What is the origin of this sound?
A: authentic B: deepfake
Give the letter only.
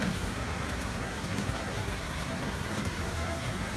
B